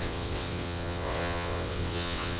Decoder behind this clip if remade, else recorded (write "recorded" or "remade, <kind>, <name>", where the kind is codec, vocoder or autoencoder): remade, vocoder, WaveNeXt